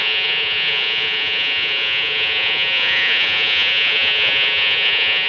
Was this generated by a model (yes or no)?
yes